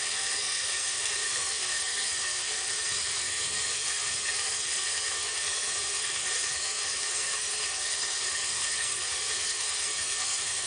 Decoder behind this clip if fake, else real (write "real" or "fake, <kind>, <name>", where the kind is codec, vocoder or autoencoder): fake, codec, SNAC